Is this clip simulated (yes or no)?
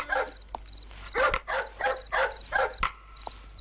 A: no